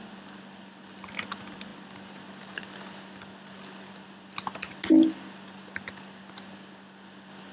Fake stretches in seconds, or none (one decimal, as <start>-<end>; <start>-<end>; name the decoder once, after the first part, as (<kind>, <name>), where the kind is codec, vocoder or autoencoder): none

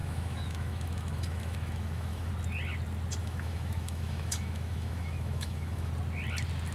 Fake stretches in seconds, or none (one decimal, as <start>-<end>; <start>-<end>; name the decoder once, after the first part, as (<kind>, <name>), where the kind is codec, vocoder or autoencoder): 0.0-2.3 (autoencoder, DAC-VAE); 3.2-5.9

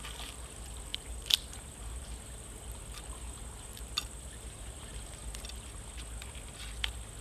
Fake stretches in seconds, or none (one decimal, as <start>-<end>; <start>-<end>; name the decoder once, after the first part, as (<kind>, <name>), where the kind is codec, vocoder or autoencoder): 0.9-5.2 (vocoder, BigVGAN v2)

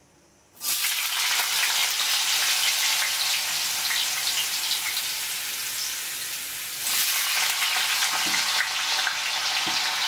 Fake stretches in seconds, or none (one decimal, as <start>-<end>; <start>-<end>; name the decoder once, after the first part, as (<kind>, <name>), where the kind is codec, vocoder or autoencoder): none

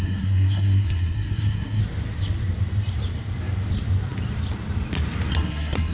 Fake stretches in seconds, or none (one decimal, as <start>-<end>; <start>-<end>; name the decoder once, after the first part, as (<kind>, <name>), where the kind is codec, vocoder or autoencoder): 0.0-1.8 (codec, SNAC); 5.3-5.9

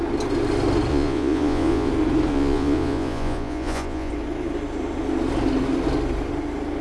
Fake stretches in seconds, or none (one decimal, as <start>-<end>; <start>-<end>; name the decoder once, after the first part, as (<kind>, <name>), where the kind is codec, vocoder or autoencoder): 0.9-1.9 (vocoder, Vocos); 2.3-4.1